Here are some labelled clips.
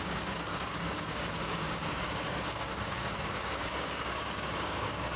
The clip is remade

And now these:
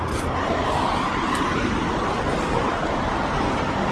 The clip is recorded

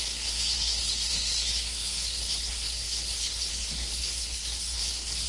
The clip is remade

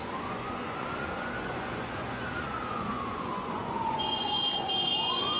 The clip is remade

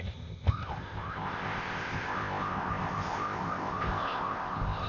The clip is remade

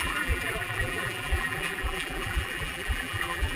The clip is remade